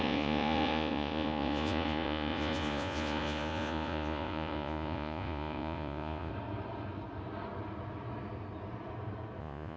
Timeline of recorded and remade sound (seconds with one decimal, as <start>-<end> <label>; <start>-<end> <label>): 0.0-6.3 remade; 6.3-9.4 recorded; 9.4-9.8 remade